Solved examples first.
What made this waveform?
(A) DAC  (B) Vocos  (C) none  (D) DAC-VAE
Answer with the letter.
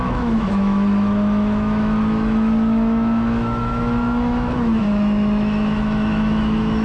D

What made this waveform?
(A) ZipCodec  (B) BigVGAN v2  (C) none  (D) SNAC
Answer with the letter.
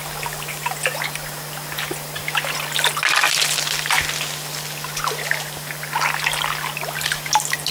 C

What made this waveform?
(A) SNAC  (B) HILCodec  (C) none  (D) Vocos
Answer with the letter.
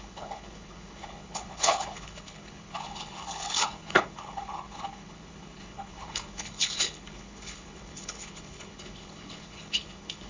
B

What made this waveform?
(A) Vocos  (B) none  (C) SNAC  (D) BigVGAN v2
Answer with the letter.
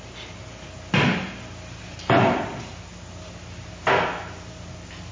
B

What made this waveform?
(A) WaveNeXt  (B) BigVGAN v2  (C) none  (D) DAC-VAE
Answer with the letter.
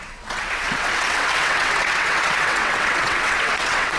A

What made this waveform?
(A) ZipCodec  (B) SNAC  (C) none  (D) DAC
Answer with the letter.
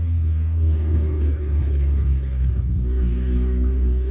D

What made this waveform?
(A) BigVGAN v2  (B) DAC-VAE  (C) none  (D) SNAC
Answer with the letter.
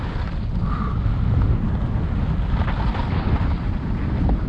C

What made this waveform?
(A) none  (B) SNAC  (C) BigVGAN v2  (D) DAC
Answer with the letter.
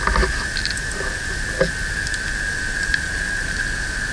A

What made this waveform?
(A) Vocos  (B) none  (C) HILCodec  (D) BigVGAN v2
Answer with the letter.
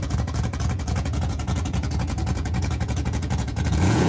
A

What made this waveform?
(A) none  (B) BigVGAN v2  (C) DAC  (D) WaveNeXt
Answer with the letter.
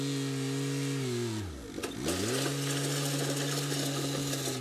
A